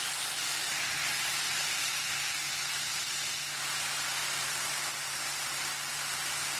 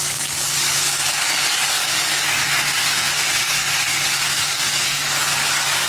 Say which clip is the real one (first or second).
first